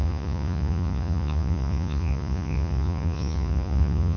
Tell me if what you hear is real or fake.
fake